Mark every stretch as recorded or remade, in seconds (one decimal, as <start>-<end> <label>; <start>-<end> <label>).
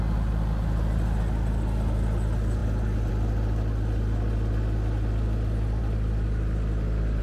0.0-5.8 recorded; 5.8-7.2 remade